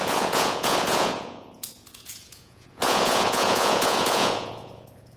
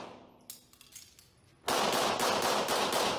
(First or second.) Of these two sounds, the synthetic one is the first